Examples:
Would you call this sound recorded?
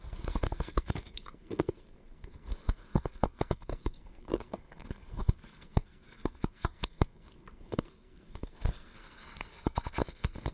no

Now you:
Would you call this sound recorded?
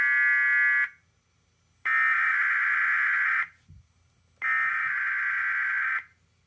yes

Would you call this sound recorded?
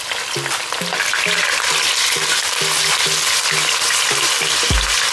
yes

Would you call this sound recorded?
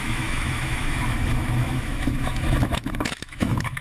no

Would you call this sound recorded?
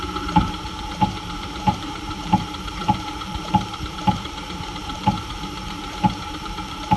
no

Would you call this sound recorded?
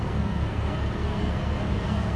no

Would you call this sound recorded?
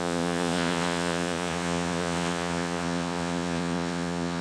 no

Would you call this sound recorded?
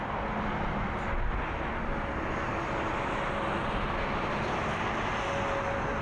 yes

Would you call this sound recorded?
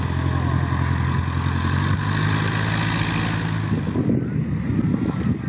yes